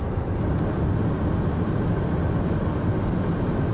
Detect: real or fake real